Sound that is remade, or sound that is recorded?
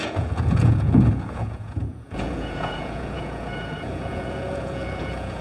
remade